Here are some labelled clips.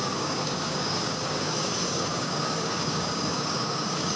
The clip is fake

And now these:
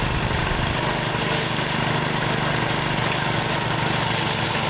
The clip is real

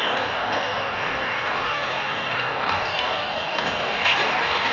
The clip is fake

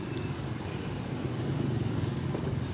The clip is fake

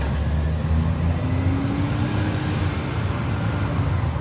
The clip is real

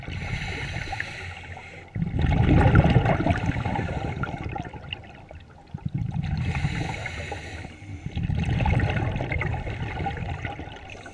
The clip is real